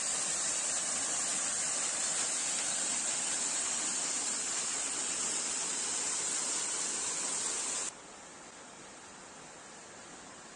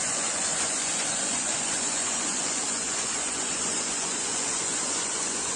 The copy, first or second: second